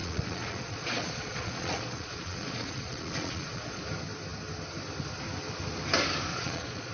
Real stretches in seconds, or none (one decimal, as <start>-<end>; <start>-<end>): 3.8-6.3